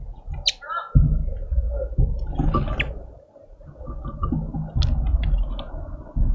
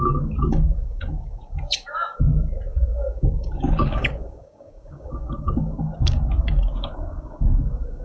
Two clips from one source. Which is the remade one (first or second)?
second